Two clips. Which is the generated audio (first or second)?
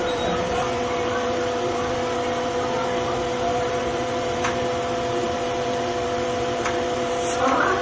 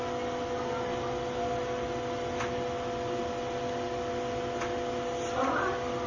first